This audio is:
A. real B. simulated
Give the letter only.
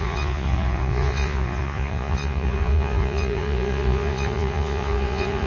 B